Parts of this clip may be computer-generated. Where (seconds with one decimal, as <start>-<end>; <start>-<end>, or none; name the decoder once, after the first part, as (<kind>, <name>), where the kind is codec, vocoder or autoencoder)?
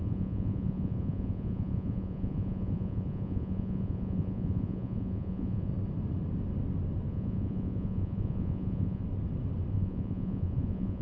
0.0-5.7 (vocoder, Vocos); 7.1-9.0; 9.7-11.0